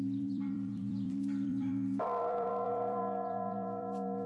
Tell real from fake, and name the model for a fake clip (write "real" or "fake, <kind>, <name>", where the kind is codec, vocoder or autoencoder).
fake, vocoder, BigVGAN v2